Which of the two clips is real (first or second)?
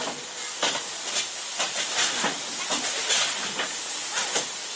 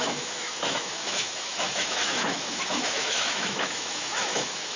first